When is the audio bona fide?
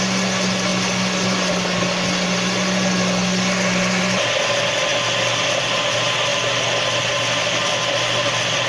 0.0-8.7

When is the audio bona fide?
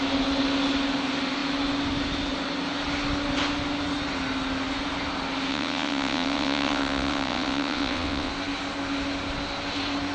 0.0-5.5; 8.3-10.1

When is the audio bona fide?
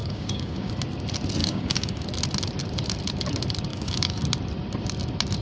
0.7-1.4; 2.0-3.7; 4.2-5.4